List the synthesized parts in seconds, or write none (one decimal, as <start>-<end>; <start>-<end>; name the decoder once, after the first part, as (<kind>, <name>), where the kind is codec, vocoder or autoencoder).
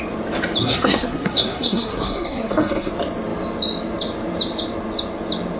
0.6-2.9 (codec, SNAC)